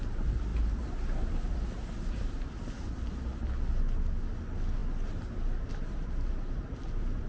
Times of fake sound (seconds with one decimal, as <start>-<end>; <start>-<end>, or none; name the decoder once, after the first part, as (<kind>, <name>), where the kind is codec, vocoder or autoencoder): none